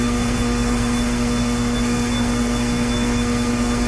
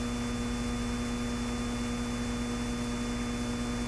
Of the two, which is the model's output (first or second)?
first